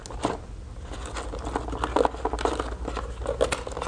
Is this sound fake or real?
real